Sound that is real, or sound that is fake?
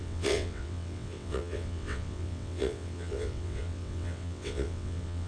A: fake